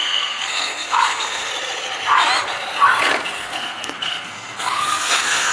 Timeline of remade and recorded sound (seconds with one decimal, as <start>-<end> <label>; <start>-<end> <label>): 0.0-1.5 remade; 1.5-3.4 recorded; 3.4-5.5 remade